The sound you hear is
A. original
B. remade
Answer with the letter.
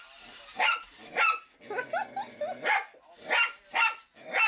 A